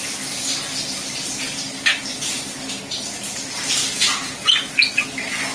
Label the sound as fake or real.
real